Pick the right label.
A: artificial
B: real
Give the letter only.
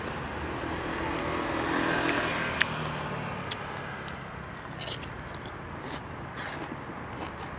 B